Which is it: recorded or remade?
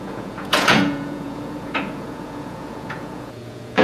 remade